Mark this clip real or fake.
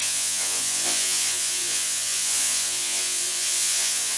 fake